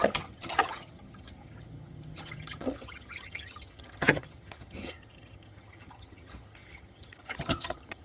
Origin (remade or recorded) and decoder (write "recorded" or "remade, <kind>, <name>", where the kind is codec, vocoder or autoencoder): remade, vocoder, HiFi-GAN